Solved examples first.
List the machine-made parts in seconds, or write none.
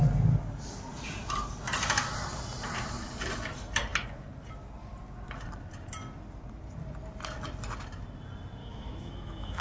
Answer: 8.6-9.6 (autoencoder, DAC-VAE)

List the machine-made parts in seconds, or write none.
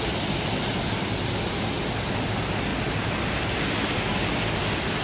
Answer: 2.7-3.5 (vocoder, BigVGAN v2)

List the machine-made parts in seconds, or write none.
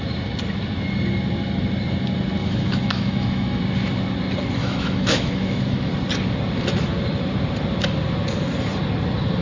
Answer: 2.4-3.6 (autoencoder, DAC-VAE); 4.6-5.9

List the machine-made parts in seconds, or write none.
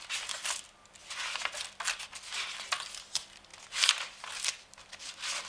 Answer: none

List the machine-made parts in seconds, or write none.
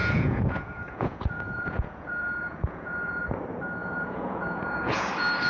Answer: 0.0-3.3 (vocoder, Vocos); 3.8-5.1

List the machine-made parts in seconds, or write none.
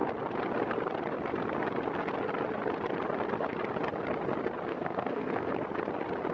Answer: 4.7-5.5 (codec, SNAC)